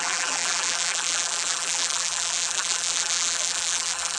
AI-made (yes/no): yes